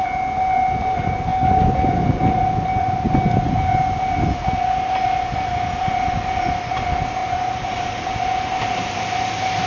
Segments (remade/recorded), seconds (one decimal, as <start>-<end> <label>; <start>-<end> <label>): 0.0-7.2 recorded; 7.2-7.7 remade; 7.7-9.7 recorded